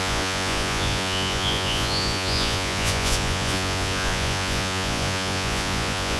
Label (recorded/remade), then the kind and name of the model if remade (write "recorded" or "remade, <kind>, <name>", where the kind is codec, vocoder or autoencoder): remade, vocoder, Vocos